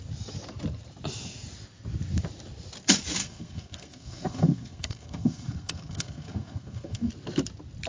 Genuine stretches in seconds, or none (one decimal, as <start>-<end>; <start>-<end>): 0.0-3.2; 7.1-7.9